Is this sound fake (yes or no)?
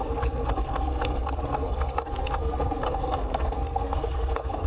yes